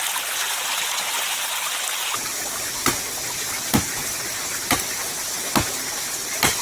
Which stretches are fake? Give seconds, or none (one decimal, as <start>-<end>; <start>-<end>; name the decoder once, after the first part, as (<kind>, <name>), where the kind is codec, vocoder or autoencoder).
none